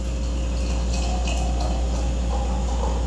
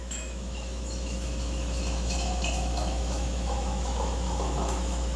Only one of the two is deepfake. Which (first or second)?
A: second